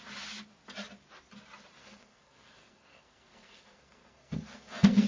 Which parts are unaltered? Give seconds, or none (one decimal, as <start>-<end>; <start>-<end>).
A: 0.0-1.8